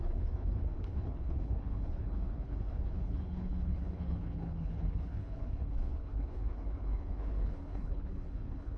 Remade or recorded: remade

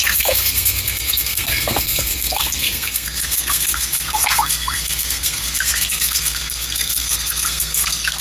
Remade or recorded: remade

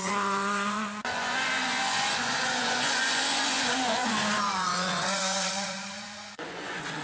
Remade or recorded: remade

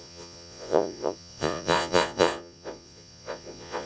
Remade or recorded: remade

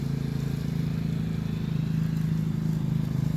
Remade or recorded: recorded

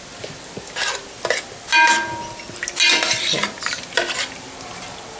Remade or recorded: recorded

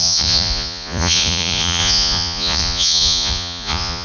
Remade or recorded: remade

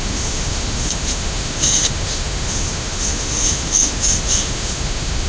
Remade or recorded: remade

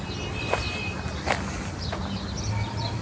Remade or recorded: recorded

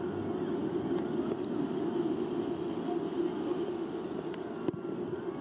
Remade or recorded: recorded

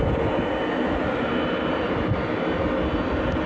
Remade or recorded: recorded